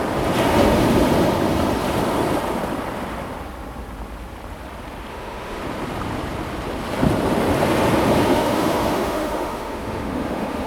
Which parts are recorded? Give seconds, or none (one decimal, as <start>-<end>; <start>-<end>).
0.0-5.1; 5.6-8.3